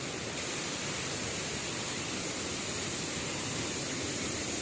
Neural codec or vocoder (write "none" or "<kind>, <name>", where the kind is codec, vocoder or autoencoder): none